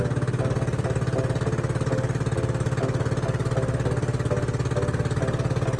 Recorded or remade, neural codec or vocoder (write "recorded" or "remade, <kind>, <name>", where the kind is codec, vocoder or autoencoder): recorded